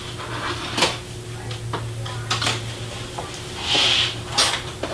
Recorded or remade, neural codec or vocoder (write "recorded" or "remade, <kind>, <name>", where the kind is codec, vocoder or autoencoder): recorded